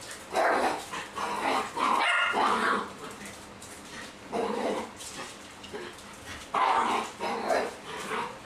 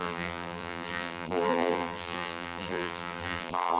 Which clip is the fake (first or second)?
second